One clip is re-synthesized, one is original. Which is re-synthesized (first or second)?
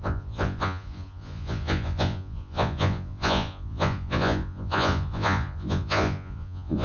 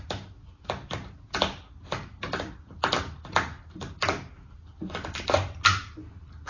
first